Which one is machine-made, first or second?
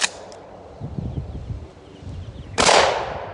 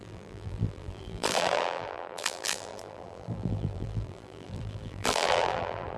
second